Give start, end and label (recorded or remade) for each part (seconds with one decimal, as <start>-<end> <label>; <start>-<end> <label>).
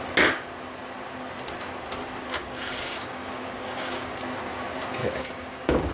0.0-2.4 recorded; 2.4-4.2 remade; 4.2-5.0 recorded; 5.0-5.9 remade